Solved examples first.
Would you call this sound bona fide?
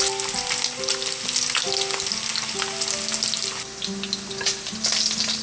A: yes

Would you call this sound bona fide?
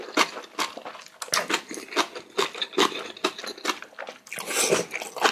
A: yes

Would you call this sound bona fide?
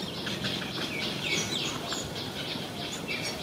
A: yes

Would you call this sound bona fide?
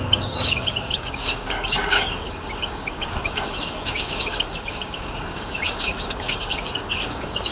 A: no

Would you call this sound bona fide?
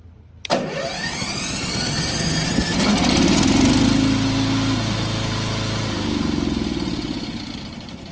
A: yes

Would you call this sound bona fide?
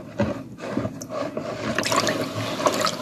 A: yes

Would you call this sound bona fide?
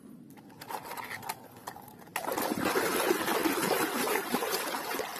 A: yes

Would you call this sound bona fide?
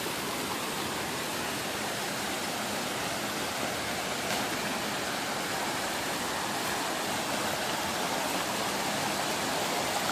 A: yes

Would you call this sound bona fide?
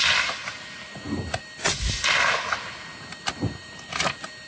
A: yes